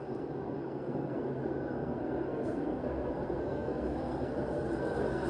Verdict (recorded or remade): remade